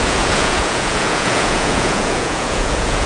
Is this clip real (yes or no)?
no